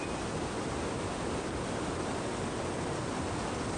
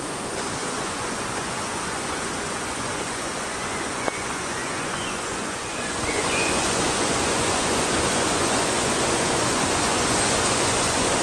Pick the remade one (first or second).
second